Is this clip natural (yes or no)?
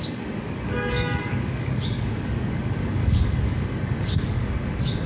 no